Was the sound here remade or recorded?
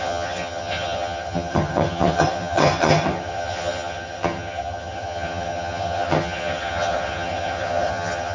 remade